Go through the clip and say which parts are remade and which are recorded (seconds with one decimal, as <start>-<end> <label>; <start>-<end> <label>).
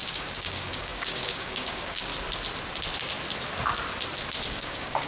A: 0.0-2.1 remade; 2.1-4.5 recorded; 4.5-5.1 remade